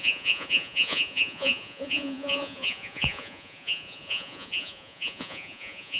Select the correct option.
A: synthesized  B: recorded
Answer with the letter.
A